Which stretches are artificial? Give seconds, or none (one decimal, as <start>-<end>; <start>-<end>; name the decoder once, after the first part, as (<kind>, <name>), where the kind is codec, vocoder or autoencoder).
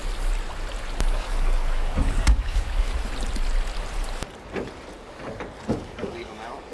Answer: 1.1-2.9 (codec, DAC); 5.7-6.7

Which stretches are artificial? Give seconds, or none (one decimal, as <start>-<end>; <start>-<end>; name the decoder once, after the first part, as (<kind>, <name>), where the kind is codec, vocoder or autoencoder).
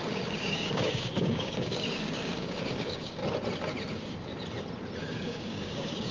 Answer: 0.0-3.2 (codec, DAC); 3.9-4.3; 5.0-6.1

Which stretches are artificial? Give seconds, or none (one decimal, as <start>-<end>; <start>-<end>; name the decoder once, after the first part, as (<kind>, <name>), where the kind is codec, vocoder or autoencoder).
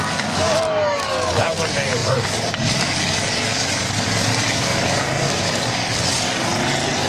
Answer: 0.0-6.5 (codec, DAC)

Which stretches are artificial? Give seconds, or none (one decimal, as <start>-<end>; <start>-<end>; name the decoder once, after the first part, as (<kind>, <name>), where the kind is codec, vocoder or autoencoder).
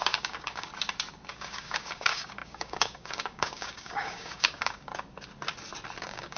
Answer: 0.0-0.7 (codec, DAC); 1.3-4.9; 6.0-6.4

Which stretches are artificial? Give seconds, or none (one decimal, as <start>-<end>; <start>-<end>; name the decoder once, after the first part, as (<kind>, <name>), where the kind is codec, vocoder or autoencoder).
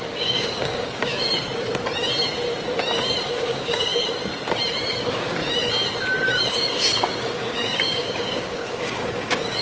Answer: 0.0-1.3 (codec, DAC); 3.3-3.9; 5.0-5.4; 6.5-9.6